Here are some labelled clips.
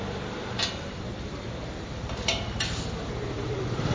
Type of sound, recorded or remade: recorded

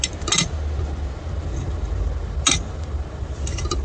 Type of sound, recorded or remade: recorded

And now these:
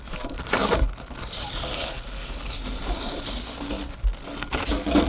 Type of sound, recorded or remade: recorded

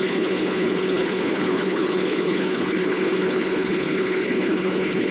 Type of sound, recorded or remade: remade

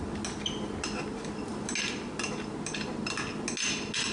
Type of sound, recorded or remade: recorded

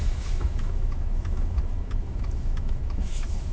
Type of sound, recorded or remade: remade